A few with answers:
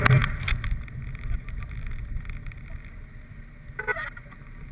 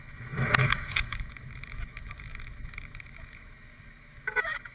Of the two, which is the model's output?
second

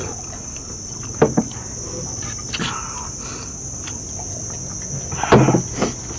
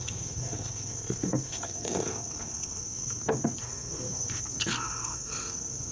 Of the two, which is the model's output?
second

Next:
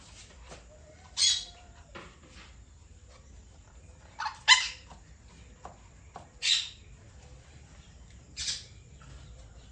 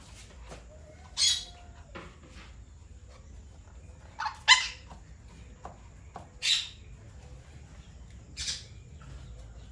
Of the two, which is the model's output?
first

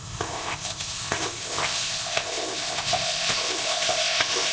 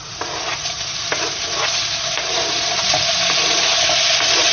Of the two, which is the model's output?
first